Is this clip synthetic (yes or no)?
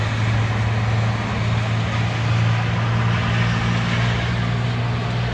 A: no